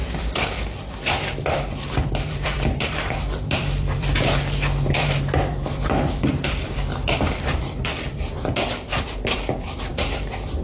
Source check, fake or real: fake